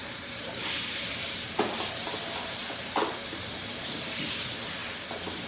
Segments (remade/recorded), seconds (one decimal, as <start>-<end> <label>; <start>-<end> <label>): 0.0-4.8 remade; 4.8-5.5 recorded